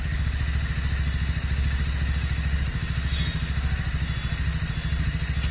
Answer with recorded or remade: recorded